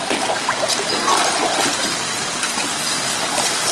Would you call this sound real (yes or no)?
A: yes